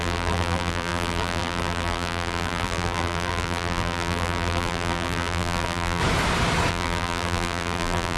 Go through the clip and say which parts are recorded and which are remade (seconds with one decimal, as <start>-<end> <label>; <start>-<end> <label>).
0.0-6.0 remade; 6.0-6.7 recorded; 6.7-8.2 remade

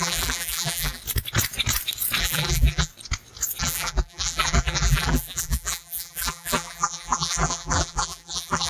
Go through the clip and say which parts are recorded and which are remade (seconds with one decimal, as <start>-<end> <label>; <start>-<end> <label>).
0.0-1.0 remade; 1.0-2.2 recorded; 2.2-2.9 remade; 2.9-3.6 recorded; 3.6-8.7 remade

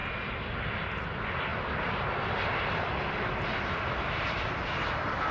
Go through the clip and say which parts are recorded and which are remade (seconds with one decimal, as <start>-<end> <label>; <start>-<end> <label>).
0.0-1.5 recorded; 1.5-4.3 remade; 4.3-5.3 recorded